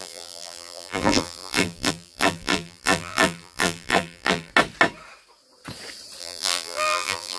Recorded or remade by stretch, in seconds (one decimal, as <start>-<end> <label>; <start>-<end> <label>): 0.0-4.5 remade; 4.5-6.2 recorded; 6.2-7.4 remade